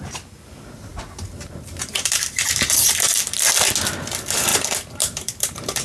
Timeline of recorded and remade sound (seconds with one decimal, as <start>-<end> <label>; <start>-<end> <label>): 0.0-0.9 recorded; 0.9-2.9 remade; 2.9-4.5 recorded; 4.5-5.8 remade